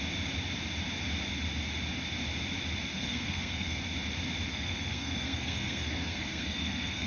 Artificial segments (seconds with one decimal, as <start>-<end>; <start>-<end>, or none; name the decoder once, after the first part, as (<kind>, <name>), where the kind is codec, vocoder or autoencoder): 2.9-3.8 (codec, SNAC); 4.5-7.1